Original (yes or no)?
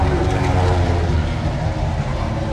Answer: no